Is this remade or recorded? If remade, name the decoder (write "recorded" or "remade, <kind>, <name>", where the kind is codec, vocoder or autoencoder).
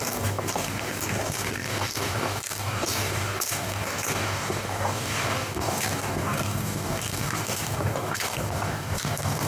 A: remade, codec, DAC